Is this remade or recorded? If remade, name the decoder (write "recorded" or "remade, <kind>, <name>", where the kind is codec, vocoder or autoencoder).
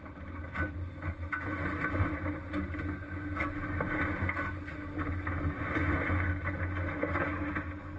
recorded